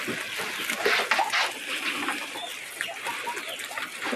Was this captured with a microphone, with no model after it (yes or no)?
yes